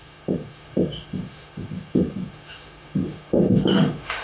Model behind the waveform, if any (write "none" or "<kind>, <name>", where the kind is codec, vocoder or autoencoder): autoencoder, DAC-VAE